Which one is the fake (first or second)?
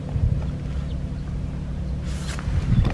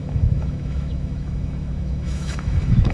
second